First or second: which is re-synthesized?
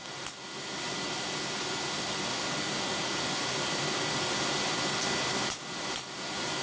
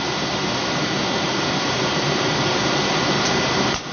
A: second